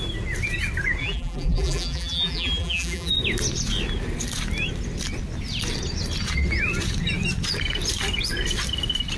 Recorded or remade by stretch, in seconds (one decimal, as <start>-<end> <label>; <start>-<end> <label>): 0.0-1.0 recorded; 1.0-3.1 remade; 3.1-9.2 recorded